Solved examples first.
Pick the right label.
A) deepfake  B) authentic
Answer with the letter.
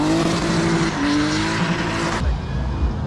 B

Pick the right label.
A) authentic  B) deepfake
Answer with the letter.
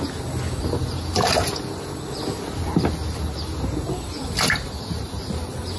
A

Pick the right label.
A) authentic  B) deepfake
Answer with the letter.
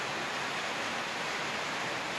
A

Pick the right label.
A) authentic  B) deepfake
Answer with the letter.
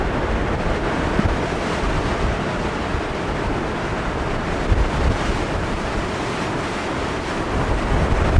B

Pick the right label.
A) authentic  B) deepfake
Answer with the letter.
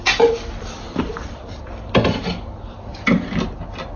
B